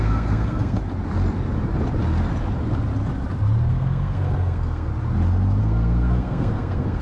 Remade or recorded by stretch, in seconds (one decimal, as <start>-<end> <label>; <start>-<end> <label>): 0.0-0.8 remade; 0.8-3.7 recorded; 3.7-4.9 remade; 4.9-5.6 recorded; 5.6-7.0 remade